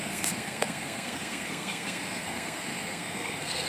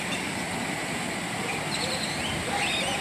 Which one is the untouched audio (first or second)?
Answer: second